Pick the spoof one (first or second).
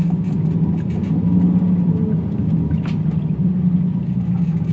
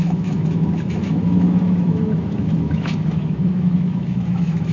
second